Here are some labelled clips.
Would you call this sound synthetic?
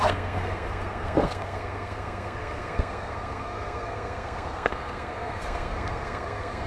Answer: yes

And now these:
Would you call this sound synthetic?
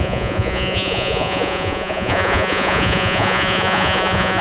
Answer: yes